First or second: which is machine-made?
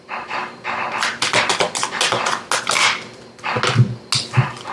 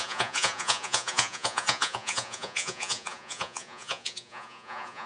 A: second